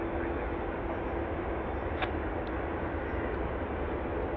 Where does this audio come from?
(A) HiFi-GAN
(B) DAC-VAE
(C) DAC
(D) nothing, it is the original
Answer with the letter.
D